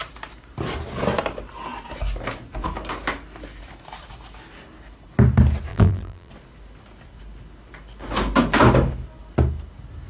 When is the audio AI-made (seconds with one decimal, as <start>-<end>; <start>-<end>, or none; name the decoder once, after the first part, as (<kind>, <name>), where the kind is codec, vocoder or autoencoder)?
5.7-6.3 (vocoder, BigVGAN v2)